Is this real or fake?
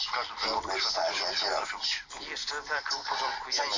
real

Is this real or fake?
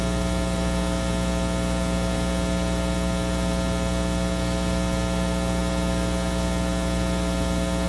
real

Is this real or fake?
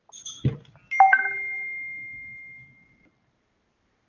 real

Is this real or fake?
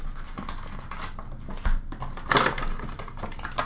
real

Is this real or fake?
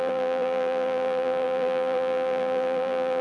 fake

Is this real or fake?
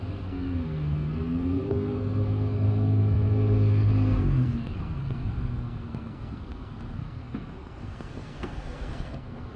fake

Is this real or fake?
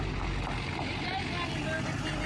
real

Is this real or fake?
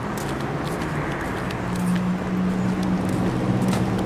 real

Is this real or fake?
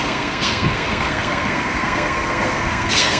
fake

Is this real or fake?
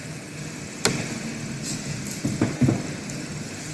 real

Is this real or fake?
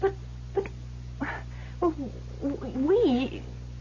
real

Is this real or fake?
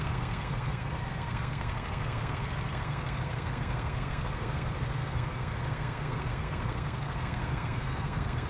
fake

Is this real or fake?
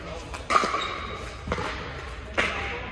real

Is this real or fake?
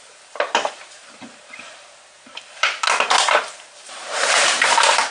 fake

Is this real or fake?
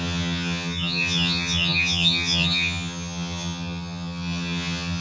fake